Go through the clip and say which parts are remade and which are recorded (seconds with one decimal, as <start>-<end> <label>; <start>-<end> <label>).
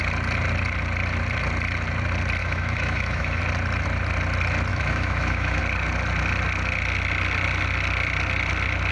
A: 0.0-2.4 recorded; 2.4-3.4 remade; 3.4-4.7 recorded; 4.7-5.6 remade; 5.6-8.9 recorded